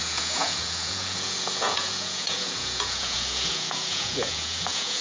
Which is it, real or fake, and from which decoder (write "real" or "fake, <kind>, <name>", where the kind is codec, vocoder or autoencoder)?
fake, vocoder, Vocos